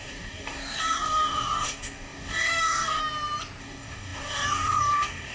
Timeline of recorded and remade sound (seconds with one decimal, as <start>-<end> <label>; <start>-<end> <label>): 0.0-3.0 remade; 3.0-3.6 recorded; 3.6-5.3 remade